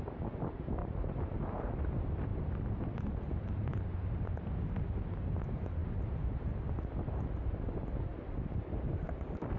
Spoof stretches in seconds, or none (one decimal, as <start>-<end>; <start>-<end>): 0.8-1.7; 2.3-4.5; 5.8-6.5